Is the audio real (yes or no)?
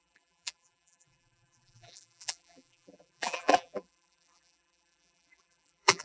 no